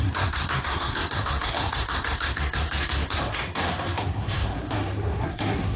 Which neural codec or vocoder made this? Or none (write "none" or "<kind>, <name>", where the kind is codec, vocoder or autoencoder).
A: codec, SNAC